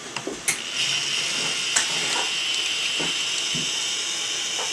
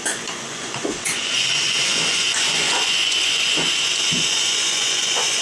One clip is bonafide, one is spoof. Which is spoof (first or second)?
second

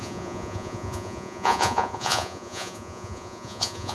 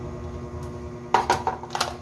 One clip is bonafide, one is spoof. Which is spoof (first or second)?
first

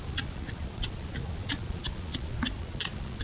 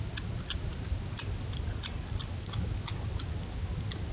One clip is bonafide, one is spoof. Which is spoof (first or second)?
first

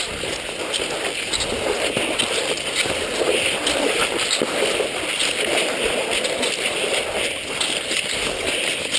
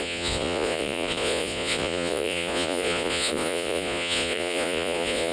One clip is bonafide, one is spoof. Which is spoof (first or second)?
second